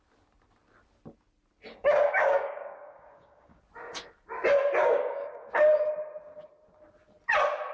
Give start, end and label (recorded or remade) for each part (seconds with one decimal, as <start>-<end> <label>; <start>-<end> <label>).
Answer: 0.0-1.8 recorded; 1.8-3.6 remade; 3.6-4.9 recorded; 4.9-5.9 remade; 5.9-7.7 recorded